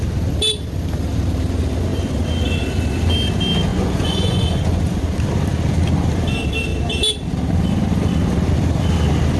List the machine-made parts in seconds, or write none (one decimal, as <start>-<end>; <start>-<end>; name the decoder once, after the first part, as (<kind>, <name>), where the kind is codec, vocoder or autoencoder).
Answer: 3.7-4.8 (vocoder, Vocos)